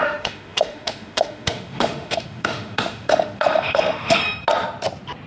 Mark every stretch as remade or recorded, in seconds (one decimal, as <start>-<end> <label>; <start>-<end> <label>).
0.0-4.2 remade; 4.2-5.3 recorded